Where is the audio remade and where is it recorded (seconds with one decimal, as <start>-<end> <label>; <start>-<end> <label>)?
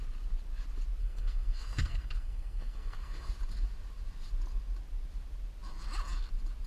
0.0-1.0 recorded; 1.0-3.3 remade; 3.3-6.7 recorded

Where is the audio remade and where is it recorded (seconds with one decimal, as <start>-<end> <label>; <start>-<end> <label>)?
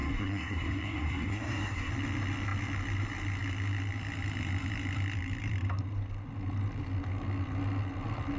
0.0-1.9 remade; 1.9-8.4 recorded